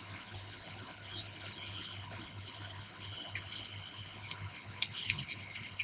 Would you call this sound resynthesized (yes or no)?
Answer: yes